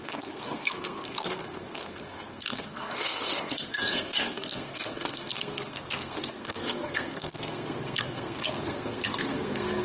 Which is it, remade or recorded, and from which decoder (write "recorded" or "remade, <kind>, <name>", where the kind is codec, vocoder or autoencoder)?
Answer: remade, codec, SNAC